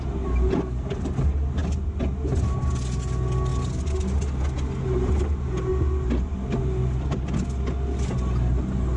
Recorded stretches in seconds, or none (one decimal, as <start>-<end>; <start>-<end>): 0.0-9.0